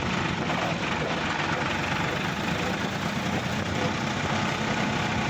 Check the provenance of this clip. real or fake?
fake